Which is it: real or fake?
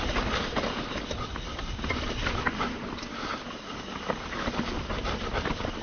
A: real